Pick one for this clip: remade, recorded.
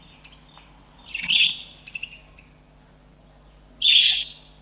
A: recorded